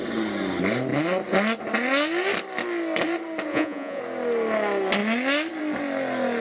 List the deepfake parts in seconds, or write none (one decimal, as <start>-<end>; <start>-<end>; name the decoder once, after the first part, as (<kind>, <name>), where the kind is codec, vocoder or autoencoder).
3.5-4.0 (vocoder, Vocos)